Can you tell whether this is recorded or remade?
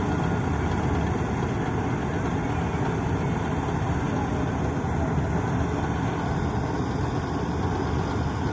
recorded